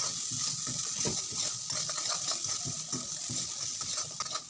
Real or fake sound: real